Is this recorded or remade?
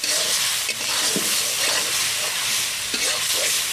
recorded